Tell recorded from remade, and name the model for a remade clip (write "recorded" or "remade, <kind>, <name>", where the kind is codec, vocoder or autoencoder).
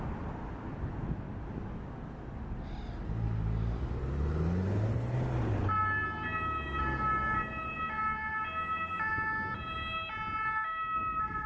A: recorded